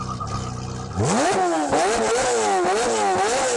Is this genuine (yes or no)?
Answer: yes